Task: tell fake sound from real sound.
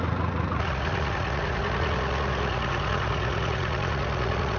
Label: fake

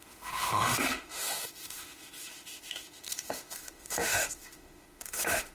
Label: fake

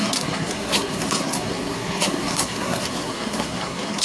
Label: fake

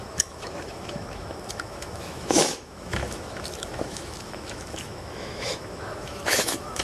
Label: fake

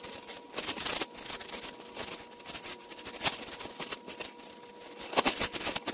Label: real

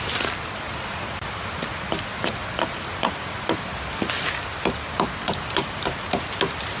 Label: real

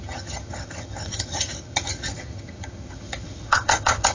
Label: fake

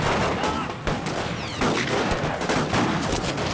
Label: real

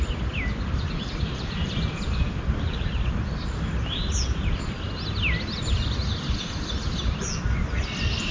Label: real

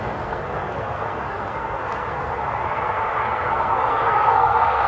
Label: fake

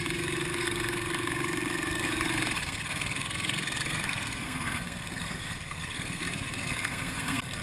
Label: fake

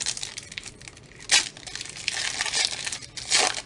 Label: real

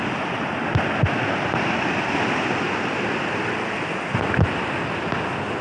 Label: real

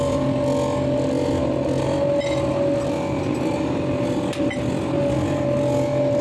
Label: real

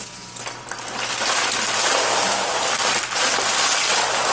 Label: real